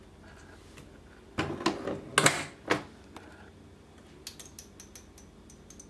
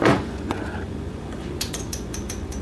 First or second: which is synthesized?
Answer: second